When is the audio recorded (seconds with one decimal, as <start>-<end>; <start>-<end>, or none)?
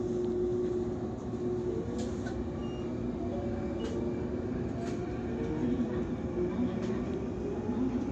0.0-8.1